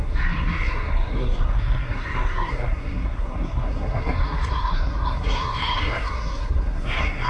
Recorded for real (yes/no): no